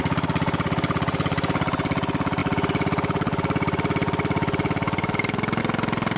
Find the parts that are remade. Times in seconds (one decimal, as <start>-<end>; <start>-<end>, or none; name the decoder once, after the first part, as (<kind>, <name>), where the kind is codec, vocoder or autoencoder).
none